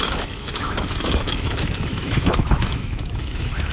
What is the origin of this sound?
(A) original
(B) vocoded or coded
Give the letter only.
B